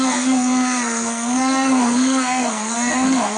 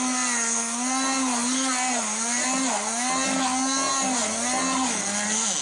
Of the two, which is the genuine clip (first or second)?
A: second